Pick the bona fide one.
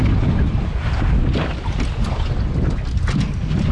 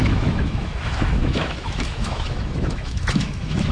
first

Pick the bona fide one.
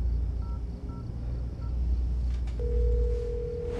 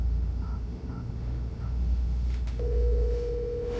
first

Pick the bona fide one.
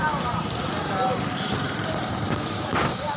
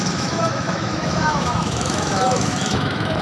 first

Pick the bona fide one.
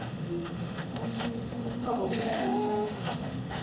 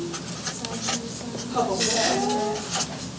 second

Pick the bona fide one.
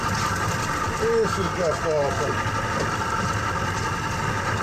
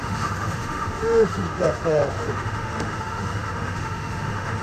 first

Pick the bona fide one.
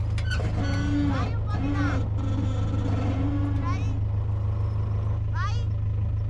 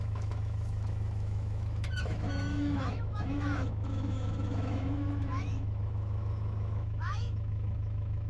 first